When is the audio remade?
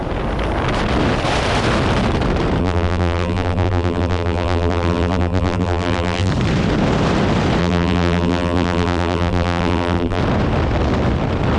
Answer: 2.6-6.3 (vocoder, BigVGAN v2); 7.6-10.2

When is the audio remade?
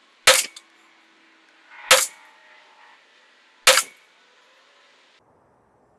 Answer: none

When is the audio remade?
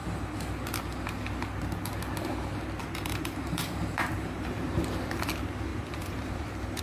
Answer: 2.8-5.3 (vocoder, BigVGAN v2); 5.7-6.8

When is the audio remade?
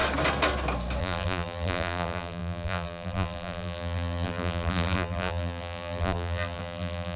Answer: 1.0-7.2 (vocoder, BigVGAN v2)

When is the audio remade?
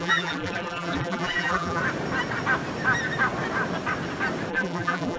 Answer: 0.0-1.8 (vocoder, BigVGAN v2); 4.5-5.2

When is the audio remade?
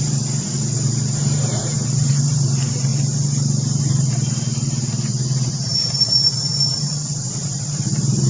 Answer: 0.0-2.9 (vocoder, BigVGAN v2); 3.8-8.3